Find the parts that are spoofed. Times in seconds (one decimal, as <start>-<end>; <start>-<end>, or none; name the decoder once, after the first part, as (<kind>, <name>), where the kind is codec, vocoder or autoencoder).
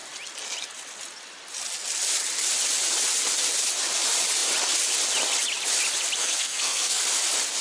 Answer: 6.2-7.0 (codec, SNAC)